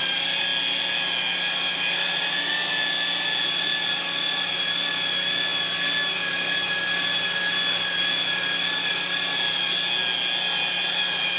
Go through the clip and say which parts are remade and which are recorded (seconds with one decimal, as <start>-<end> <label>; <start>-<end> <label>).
0.0-11.4 recorded